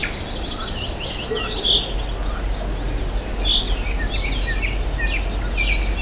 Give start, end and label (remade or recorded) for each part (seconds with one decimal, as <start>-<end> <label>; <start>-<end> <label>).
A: 0.0-6.0 recorded